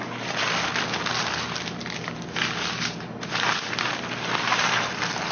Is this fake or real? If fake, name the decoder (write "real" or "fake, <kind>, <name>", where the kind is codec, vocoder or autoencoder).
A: real